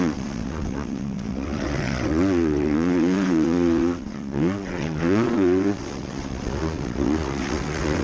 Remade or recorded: remade